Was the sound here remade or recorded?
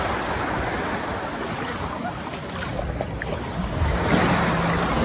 recorded